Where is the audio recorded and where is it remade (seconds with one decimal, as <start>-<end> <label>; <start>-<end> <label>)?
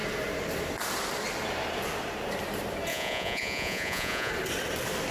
0.0-2.9 recorded; 2.9-4.3 remade; 4.3-5.1 recorded